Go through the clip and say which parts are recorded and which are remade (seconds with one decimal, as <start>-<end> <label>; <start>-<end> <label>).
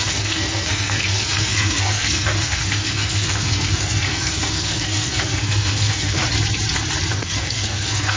0.0-6.2 remade; 6.2-7.1 recorded; 7.1-8.2 remade